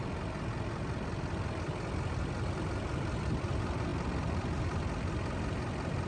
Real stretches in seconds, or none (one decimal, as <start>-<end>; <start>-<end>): 0.0-6.1